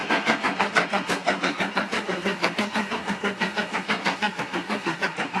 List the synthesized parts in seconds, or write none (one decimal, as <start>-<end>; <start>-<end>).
0.0-5.4